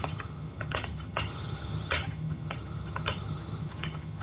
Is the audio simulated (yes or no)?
yes